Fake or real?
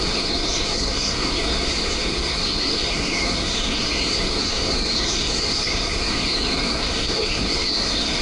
fake